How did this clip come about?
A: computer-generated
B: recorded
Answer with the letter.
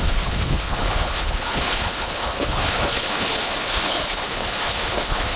A